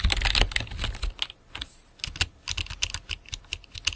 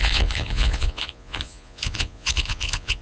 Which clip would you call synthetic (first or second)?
second